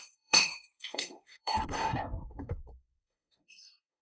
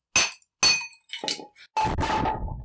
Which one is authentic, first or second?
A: second